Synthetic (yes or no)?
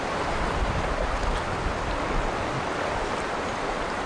no